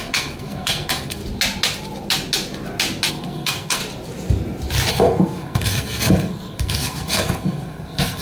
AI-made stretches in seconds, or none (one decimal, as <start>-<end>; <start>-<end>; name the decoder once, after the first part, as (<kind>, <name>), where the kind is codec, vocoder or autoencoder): 0.0-1.2 (codec, SNAC); 3.1-3.8; 4.9-8.2